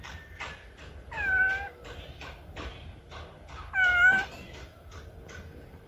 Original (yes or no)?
no